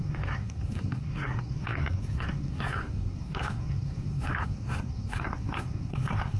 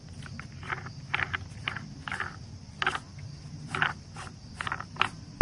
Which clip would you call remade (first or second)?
first